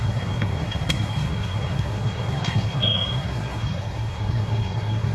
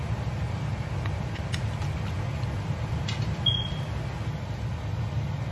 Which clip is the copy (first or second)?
first